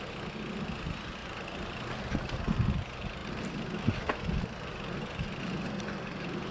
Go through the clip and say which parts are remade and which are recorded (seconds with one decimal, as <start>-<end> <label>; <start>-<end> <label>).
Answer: 0.0-1.2 recorded; 1.2-2.4 remade; 2.4-6.5 recorded